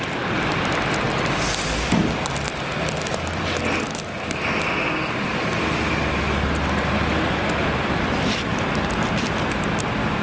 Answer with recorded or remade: recorded